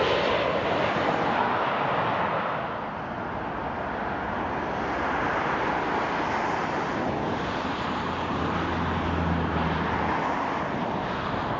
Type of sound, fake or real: real